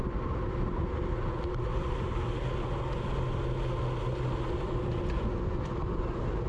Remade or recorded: recorded